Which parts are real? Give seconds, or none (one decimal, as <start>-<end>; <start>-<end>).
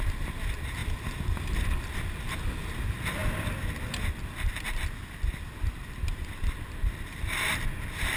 0.0-8.2